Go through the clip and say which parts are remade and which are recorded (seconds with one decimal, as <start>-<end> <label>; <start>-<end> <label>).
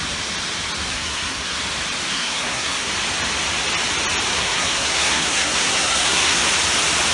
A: 0.0-0.9 recorded; 0.9-1.6 remade; 1.6-2.1 recorded; 2.1-2.9 remade; 2.9-4.3 recorded; 4.3-6.4 remade; 6.4-7.1 recorded